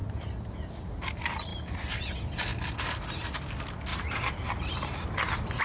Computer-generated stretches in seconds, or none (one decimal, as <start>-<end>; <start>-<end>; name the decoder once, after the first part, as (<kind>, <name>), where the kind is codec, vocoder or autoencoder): 3.9-5.6 (vocoder, BigVGAN v2)